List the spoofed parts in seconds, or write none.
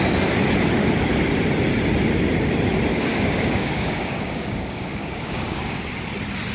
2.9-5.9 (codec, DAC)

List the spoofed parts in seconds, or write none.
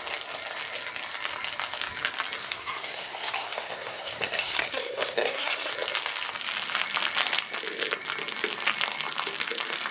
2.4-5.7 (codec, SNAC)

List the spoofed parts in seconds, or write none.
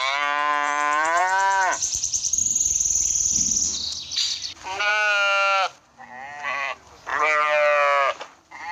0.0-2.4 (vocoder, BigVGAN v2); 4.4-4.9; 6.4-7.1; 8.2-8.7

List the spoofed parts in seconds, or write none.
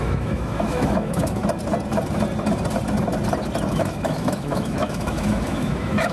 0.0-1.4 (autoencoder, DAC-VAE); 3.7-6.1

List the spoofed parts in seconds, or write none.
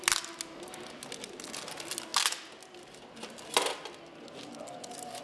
none